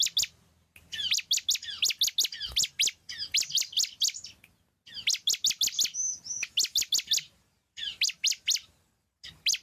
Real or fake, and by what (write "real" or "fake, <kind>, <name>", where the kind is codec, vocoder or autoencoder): real